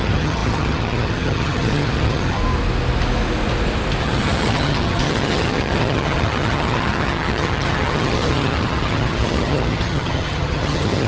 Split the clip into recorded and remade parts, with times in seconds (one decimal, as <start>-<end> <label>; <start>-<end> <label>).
0.0-2.4 remade; 2.4-4.0 recorded; 4.0-11.1 remade